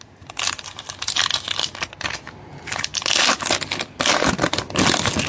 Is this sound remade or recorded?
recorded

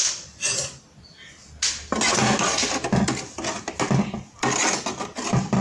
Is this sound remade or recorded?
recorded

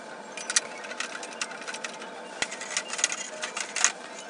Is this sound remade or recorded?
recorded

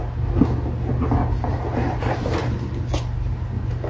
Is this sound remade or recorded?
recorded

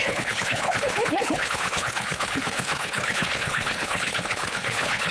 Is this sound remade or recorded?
remade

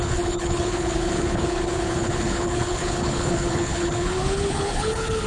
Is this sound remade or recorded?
remade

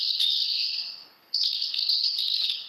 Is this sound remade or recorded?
remade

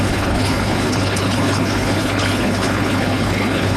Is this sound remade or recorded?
remade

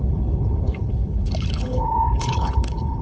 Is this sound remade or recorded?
remade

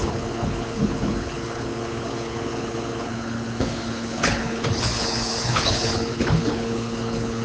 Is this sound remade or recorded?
remade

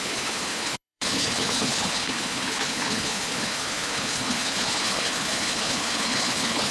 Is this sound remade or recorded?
remade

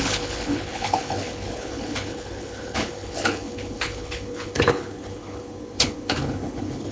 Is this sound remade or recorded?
remade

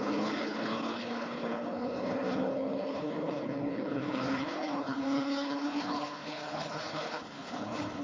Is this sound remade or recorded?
remade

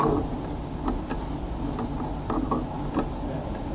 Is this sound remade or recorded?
recorded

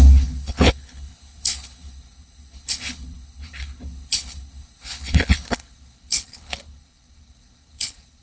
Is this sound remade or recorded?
remade